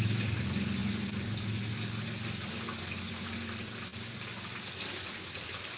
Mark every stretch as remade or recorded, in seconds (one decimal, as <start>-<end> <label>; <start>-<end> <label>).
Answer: 0.0-5.8 recorded